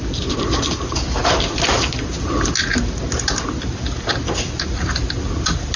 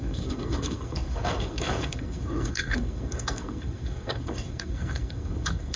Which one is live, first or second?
first